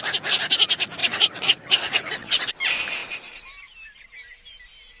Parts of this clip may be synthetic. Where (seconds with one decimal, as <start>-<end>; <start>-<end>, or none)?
1.0-2.5